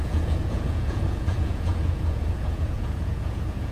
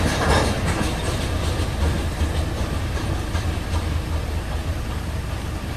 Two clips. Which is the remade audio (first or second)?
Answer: first